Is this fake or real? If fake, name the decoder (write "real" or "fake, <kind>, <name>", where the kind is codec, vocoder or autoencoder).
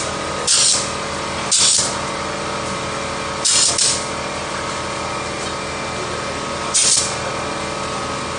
real